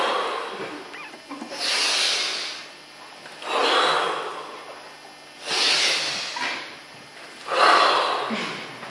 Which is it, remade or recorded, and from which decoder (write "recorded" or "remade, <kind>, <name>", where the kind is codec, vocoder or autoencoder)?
recorded